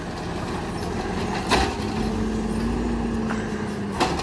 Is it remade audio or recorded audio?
recorded